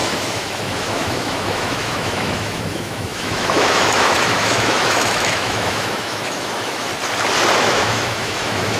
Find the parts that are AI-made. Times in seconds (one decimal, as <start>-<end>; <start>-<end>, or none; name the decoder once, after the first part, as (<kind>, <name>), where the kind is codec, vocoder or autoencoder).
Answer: 0.0-6.9 (autoencoder, DAC-VAE); 7.5-8.8